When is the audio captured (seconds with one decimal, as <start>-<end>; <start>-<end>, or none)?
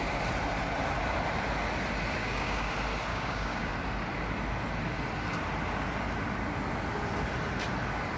0.0-2.2; 2.7-3.1; 3.7-8.2